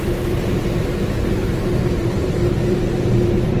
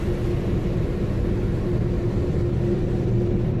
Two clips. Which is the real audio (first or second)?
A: second